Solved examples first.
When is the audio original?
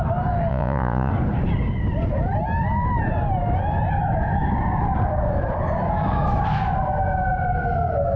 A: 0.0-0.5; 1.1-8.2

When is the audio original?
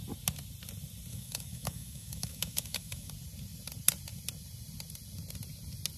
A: 0.0-1.1; 3.1-6.0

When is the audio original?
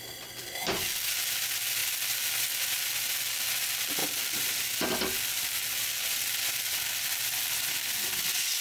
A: 0.0-8.6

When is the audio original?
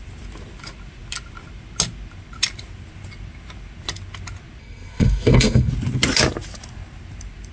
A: 0.0-4.6; 5.7-7.5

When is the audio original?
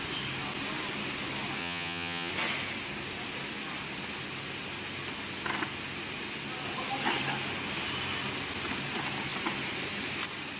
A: 0.0-1.6; 2.3-10.6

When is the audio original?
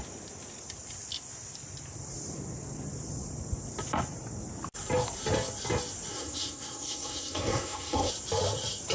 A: 0.0-6.1; 8.1-8.9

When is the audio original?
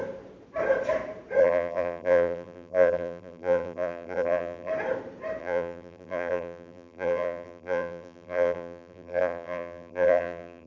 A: 0.0-1.4; 4.7-5.4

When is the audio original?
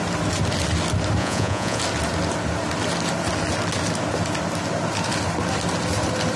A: 0.0-1.2; 1.8-6.4